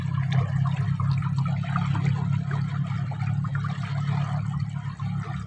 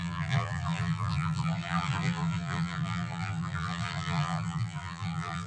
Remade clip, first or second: second